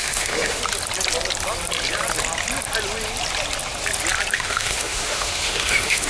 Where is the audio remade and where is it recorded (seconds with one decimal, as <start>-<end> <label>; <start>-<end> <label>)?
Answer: 0.0-0.6 remade; 0.6-4.3 recorded; 4.3-6.1 remade